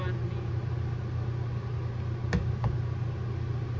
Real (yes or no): yes